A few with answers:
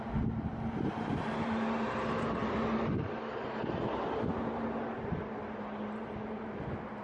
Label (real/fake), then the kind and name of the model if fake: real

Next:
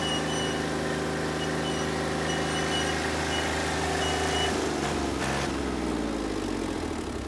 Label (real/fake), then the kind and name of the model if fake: real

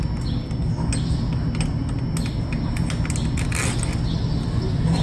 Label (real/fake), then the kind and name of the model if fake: real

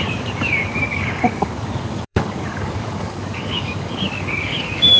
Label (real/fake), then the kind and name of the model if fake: fake, codec, DAC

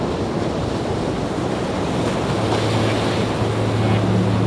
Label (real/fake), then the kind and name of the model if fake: real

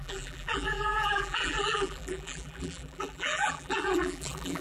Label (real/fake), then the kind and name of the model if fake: fake, vocoder, BigVGAN v2